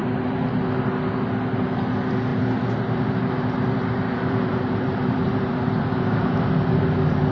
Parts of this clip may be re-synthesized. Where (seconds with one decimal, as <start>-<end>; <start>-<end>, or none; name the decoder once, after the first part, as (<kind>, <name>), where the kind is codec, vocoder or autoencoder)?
0.0-0.5 (vocoder, BigVGAN v2); 2.3-6.3